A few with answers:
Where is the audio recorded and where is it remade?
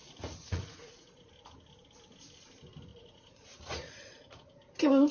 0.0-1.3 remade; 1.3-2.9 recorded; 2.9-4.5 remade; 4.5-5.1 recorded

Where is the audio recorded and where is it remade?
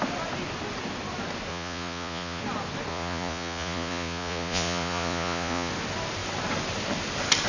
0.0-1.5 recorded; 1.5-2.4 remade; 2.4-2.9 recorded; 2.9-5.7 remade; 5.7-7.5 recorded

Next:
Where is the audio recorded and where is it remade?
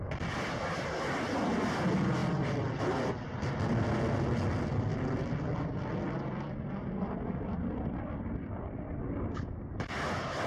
0.0-10.5 recorded